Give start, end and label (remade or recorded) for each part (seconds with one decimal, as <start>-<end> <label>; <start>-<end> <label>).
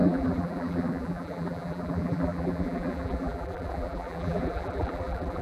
0.0-5.4 remade